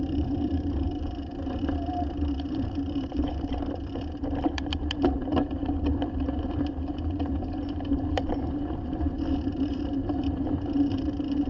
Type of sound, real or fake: fake